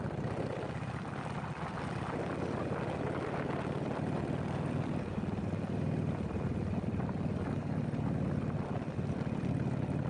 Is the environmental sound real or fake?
real